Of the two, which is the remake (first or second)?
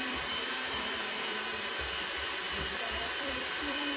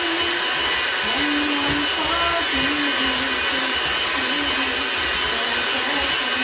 first